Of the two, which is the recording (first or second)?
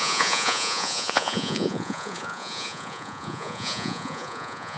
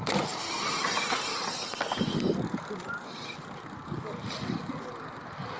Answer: second